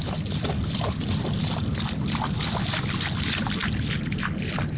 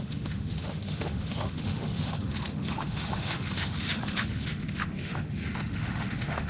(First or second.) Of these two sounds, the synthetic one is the second